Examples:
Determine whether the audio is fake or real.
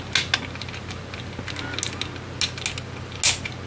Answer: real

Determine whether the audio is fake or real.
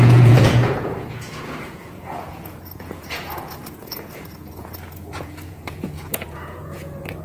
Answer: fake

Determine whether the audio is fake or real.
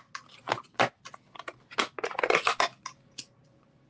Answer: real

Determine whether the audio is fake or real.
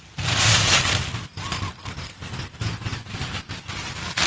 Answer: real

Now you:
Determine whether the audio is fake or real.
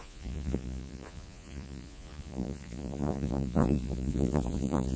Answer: fake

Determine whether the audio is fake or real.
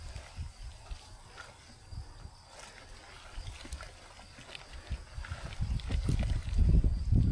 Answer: real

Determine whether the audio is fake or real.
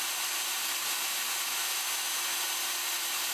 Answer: real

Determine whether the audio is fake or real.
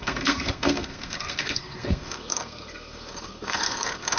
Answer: fake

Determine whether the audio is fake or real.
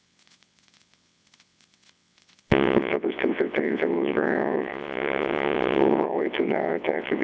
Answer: fake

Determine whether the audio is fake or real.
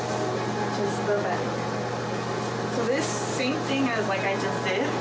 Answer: real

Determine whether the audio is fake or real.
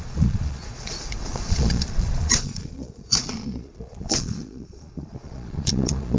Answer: fake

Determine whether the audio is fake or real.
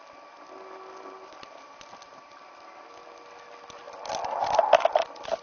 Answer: real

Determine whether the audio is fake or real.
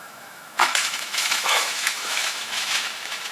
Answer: fake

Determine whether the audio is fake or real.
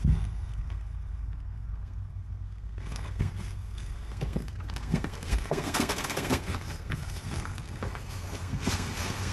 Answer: fake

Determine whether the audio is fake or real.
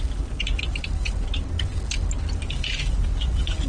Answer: real